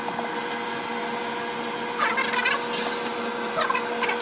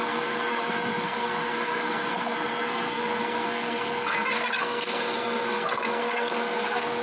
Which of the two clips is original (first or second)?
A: first